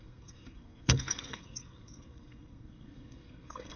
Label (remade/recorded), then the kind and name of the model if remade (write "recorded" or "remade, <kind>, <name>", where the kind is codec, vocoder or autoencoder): remade, codec, SNAC